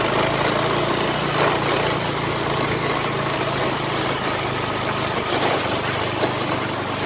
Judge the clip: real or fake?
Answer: real